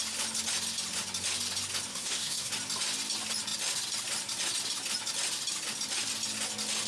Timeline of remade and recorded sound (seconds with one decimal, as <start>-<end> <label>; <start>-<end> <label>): 0.0-1.9 recorded; 1.9-2.5 remade; 2.5-6.9 recorded